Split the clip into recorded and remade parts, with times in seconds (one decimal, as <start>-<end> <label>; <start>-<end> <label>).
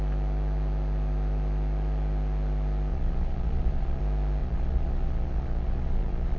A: 0.0-2.9 recorded; 2.9-4.0 remade; 4.0-4.4 recorded; 4.4-6.4 remade